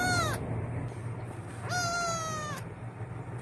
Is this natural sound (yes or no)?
yes